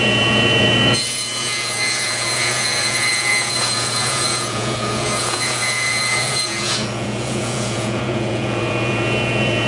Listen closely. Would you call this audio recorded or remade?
remade